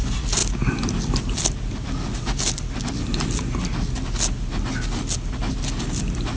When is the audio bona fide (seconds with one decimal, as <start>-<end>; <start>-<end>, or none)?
0.0-6.4